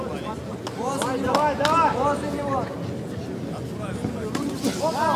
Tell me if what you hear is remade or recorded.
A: recorded